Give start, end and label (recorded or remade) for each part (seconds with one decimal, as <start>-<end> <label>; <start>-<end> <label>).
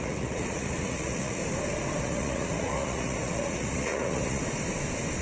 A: 0.0-1.4 remade; 1.4-2.0 recorded; 2.0-4.4 remade; 4.4-5.2 recorded